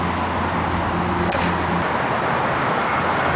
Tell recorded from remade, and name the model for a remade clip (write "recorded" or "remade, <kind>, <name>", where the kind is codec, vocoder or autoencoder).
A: recorded